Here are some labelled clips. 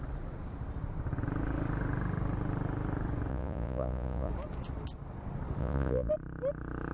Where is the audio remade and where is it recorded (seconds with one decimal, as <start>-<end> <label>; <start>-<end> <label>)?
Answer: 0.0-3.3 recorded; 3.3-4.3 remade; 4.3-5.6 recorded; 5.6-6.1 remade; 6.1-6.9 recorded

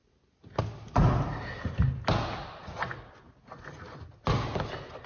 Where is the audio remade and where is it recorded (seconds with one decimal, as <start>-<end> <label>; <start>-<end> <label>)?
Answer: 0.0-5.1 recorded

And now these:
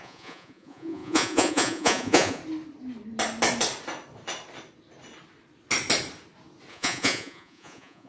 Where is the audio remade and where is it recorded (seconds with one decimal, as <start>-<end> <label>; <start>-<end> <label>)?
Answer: 0.0-2.4 remade; 2.4-6.7 recorded; 6.7-8.1 remade

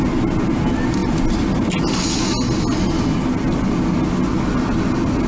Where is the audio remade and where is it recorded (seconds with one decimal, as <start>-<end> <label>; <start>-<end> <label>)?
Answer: 0.0-5.3 recorded

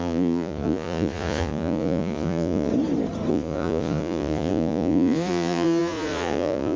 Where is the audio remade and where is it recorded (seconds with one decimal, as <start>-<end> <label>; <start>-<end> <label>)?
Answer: 0.0-2.7 remade; 2.7-3.3 recorded; 3.3-6.8 remade

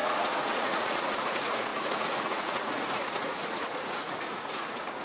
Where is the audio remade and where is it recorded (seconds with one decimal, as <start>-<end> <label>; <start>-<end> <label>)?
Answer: 0.0-5.0 remade